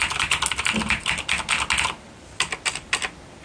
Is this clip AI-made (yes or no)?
no